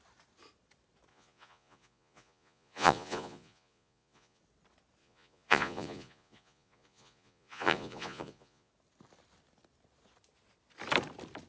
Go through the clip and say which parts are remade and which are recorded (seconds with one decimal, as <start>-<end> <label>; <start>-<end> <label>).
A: 0.0-1.1 recorded; 1.1-4.4 remade; 4.4-5.0 recorded; 5.0-8.7 remade; 8.7-11.5 recorded